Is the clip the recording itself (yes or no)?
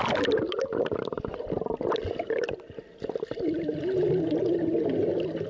yes